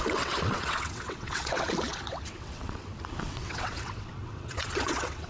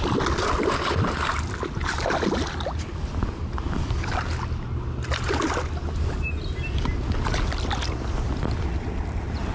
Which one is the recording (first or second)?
second